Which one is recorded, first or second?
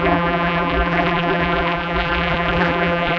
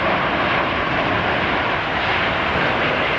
second